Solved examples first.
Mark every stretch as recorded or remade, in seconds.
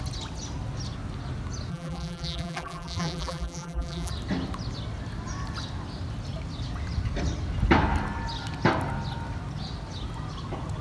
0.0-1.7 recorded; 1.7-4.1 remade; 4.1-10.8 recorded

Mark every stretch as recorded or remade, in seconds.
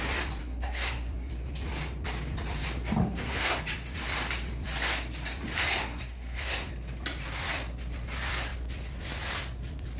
0.0-0.4 recorded; 0.4-1.3 remade; 1.3-3.0 recorded; 3.0-3.6 remade; 3.6-5.8 recorded; 5.8-6.7 remade; 6.7-10.0 recorded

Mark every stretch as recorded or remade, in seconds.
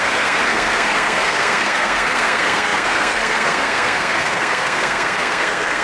0.0-5.8 remade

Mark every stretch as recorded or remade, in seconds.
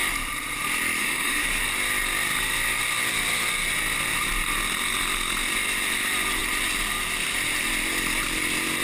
0.0-1.0 recorded; 1.0-1.6 remade; 1.6-8.8 recorded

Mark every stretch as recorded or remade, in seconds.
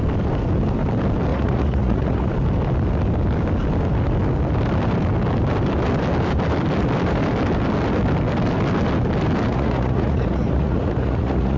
0.0-1.3 recorded; 1.3-2.3 remade; 2.3-9.5 recorded; 9.5-11.6 remade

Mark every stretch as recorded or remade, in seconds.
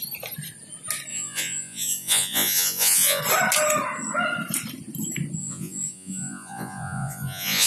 0.0-1.1 recorded; 1.1-3.2 remade; 3.2-5.4 recorded; 5.4-7.7 remade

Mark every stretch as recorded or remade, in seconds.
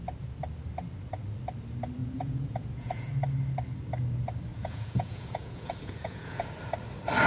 0.0-2.0 recorded; 2.0-3.1 remade; 3.1-4.5 recorded; 4.5-6.5 remade; 6.5-7.3 recorded